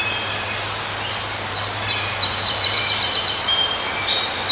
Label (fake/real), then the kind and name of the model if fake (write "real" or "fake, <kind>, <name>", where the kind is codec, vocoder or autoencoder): fake, vocoder, BigVGAN v2